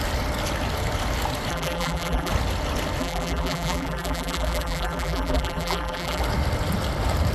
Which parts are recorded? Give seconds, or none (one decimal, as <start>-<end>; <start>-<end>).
0.0-1.5; 2.3-3.0; 6.2-7.3